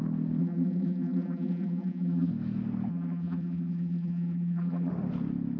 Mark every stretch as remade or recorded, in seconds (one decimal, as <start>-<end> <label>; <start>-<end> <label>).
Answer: 0.0-0.4 recorded; 0.4-2.3 remade; 2.3-2.9 recorded; 2.9-4.9 remade; 4.9-5.6 recorded